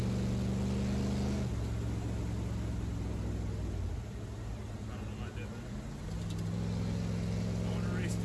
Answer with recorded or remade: recorded